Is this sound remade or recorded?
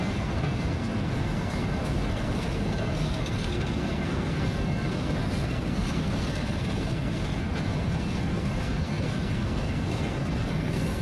remade